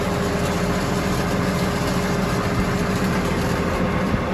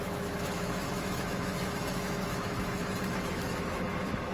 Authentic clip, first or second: first